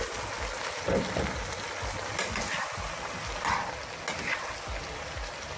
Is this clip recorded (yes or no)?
yes